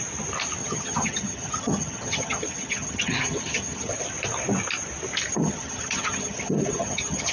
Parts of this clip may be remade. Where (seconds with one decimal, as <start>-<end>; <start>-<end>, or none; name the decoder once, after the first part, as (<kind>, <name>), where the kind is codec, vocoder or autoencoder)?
0.6-3.9 (vocoder, HiFi-GAN); 5.3-7.3

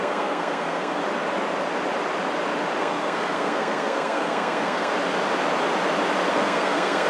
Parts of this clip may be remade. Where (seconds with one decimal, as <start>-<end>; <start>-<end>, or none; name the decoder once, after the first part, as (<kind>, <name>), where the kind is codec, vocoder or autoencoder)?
0.0-1.0 (codec, SNAC); 2.8-4.9; 6.3-7.1